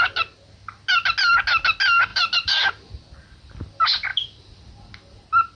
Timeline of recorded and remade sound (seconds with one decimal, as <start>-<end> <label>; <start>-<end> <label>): 0.0-2.1 recorded; 2.1-3.5 remade; 3.5-4.1 recorded; 4.1-4.9 remade; 4.9-5.5 recorded